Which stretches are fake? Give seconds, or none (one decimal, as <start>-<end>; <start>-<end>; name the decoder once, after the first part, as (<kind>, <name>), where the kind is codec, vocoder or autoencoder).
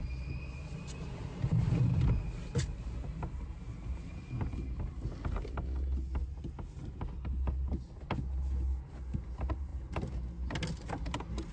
none